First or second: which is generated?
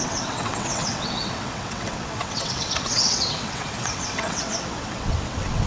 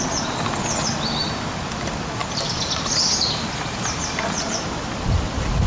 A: first